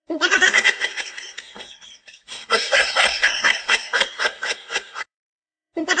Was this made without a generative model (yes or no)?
no